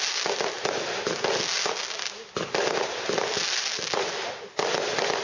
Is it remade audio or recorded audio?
recorded